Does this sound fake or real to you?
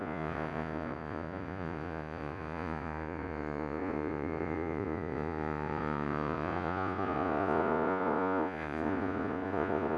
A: fake